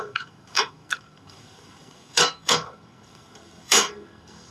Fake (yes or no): yes